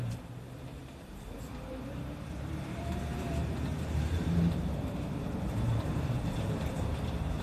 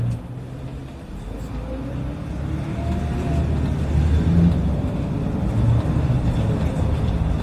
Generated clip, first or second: first